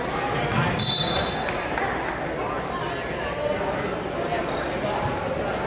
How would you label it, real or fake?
real